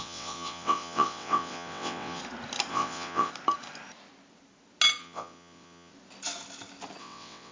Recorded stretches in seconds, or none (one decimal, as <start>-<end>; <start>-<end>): 2.2-2.7; 3.3-5.0; 5.9-7.0